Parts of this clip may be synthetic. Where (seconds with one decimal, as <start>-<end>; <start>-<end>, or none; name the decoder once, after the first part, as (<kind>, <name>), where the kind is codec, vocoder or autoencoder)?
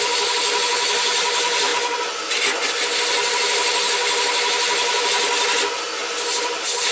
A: none